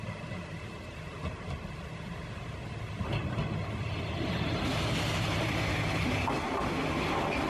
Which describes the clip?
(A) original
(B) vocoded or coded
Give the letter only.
A